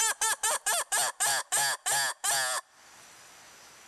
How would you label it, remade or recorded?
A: recorded